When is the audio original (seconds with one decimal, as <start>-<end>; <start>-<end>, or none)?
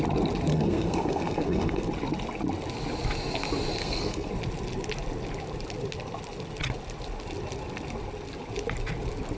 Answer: 0.0-0.5; 1.9-3.8; 4.3-9.4